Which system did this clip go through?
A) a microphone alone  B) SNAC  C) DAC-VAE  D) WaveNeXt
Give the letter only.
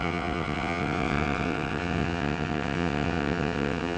D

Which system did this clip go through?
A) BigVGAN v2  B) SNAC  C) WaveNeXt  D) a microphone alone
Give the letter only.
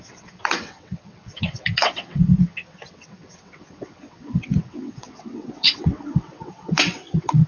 C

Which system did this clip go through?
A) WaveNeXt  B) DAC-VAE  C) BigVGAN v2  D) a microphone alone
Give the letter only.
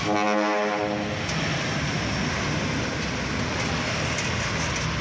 D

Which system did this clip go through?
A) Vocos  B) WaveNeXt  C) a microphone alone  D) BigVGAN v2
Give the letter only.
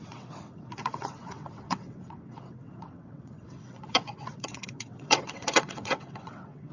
B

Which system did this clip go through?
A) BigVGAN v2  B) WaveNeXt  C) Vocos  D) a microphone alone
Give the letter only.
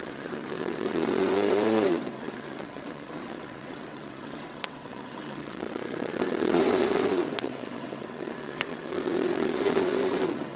B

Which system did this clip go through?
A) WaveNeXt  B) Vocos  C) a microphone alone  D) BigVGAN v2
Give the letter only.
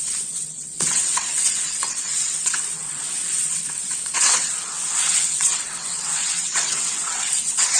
A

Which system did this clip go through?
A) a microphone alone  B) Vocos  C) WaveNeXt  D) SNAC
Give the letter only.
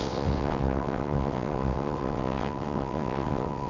C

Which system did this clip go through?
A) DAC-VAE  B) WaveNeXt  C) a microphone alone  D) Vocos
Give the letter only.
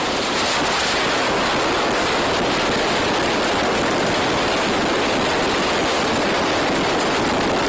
C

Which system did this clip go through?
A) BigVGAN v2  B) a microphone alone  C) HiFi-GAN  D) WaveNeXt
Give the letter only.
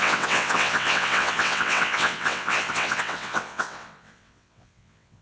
D